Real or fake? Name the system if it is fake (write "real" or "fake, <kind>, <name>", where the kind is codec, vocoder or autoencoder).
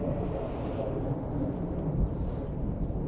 real